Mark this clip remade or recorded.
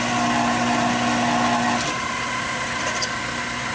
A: recorded